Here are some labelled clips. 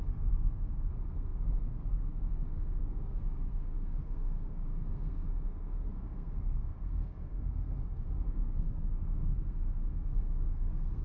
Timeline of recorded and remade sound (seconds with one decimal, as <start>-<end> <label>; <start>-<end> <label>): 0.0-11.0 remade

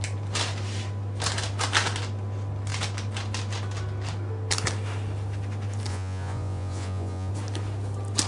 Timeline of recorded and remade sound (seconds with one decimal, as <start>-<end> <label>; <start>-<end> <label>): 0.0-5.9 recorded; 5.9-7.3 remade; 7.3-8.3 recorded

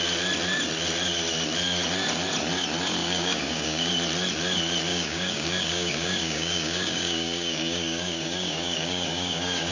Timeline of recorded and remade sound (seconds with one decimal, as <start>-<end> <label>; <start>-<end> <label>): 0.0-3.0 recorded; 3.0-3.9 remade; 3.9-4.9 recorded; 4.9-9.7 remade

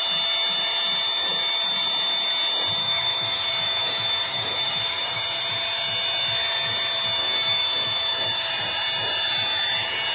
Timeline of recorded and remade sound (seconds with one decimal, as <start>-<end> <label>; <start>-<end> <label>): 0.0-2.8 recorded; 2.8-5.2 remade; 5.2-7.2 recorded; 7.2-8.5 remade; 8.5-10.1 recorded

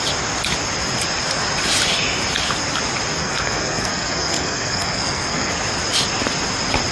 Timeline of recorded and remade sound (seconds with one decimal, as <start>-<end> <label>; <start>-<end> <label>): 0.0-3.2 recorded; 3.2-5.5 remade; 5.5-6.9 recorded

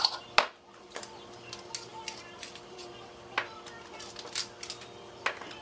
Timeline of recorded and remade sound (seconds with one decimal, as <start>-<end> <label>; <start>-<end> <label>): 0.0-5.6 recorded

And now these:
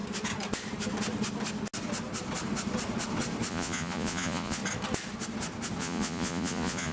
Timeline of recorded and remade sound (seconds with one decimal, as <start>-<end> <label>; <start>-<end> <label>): 0.0-3.5 recorded; 3.5-4.6 remade; 4.6-5.8 recorded; 5.8-6.9 remade